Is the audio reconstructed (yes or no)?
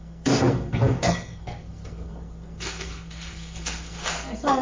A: yes